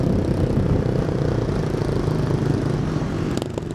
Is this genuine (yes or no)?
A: yes